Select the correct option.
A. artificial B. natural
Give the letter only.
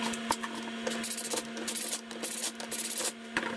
B